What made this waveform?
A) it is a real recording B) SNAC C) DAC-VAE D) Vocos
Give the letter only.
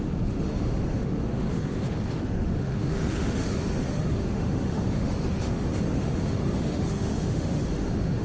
C